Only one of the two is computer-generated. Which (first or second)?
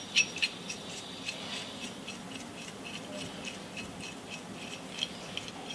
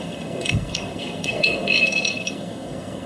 second